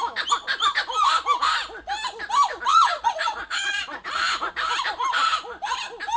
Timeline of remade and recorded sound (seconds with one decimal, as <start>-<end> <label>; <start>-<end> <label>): 0.0-2.7 recorded; 2.7-4.5 remade; 4.5-6.2 recorded